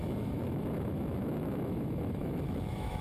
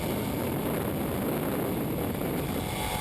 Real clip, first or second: second